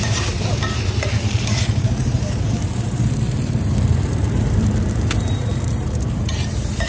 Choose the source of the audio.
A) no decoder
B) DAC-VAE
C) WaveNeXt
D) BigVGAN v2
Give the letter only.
D